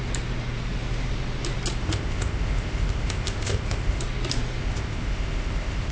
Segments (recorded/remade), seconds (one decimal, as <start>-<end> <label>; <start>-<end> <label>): 0.0-1.8 recorded; 1.8-4.0 remade; 4.0-4.6 recorded; 4.6-5.9 remade